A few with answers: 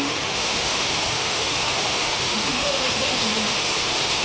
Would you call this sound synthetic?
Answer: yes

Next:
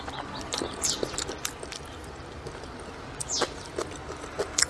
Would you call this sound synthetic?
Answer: no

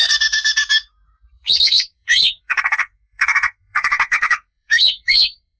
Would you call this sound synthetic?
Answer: yes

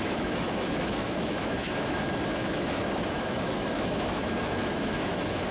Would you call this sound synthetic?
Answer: yes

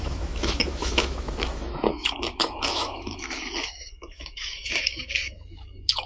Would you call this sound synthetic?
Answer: yes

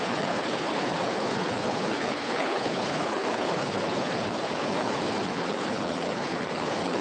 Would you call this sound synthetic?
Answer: yes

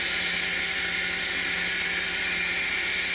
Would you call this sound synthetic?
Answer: no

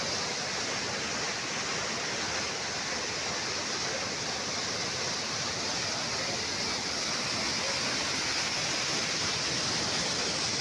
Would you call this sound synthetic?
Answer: no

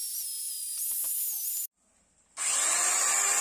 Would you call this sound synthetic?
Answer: no